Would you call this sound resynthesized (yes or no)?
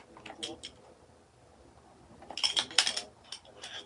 no